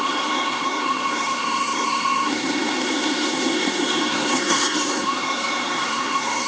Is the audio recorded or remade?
remade